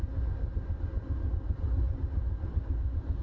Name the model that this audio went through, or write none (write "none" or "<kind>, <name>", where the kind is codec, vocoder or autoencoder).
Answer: none